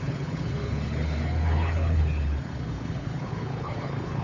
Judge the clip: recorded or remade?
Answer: remade